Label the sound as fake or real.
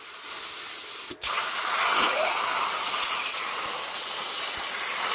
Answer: real